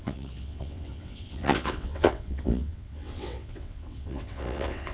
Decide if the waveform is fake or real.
fake